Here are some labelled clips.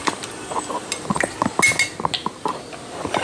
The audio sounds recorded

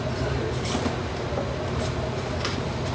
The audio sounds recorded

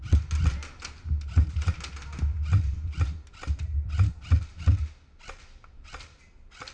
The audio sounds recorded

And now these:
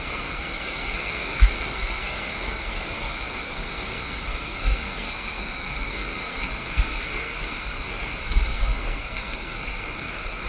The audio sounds remade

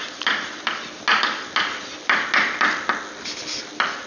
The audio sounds recorded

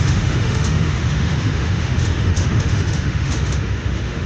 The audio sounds remade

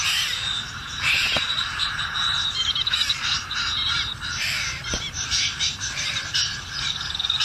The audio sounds remade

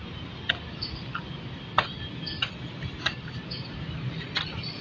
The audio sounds recorded